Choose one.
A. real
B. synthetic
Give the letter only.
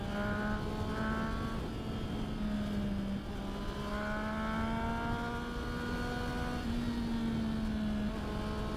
A